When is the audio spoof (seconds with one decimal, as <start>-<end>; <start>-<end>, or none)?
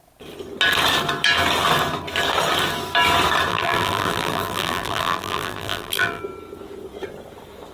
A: 3.5-6.2